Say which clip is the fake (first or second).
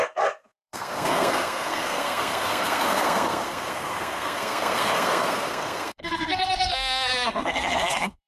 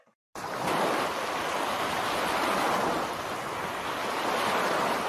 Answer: first